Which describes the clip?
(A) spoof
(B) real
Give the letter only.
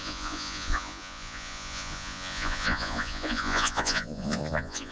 A